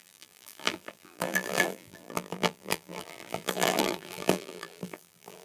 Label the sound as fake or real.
fake